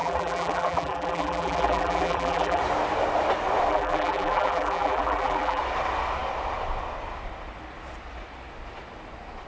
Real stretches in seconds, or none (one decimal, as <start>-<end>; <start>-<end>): 2.6-3.7; 5.6-9.5